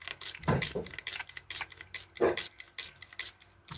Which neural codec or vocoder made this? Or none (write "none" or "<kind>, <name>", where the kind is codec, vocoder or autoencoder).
none